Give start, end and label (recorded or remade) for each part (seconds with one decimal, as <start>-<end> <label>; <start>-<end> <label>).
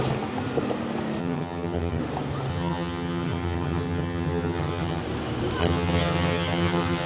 0.0-1.2 recorded; 1.2-2.0 remade; 2.0-2.5 recorded; 2.5-5.0 remade; 5.0-5.6 recorded; 5.6-7.1 remade